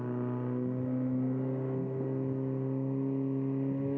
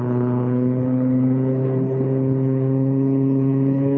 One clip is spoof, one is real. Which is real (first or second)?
first